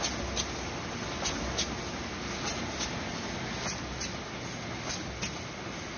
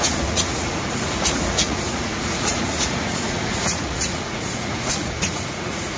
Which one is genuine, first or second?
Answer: first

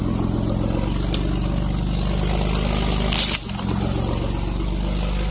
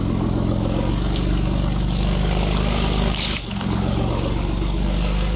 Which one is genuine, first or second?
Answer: first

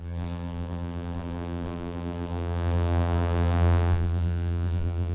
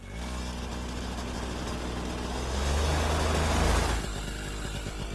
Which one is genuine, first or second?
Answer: second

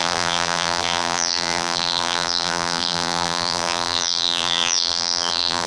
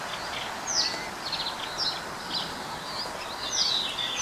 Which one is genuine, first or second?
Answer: second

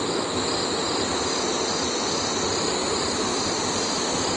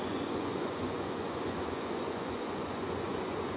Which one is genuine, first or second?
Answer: first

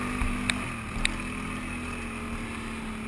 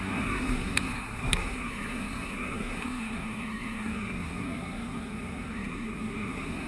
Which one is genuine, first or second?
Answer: first